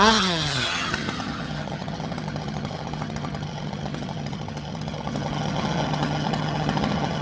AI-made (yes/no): yes